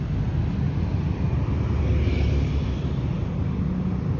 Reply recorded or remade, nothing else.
recorded